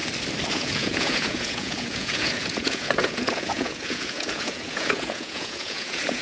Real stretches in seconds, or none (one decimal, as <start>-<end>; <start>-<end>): 0.0-0.5